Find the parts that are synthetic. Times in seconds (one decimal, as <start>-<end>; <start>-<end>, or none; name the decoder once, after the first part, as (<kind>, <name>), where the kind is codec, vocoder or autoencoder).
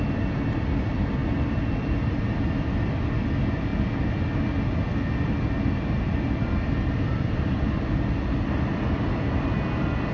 none